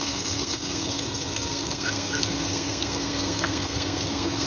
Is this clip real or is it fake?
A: fake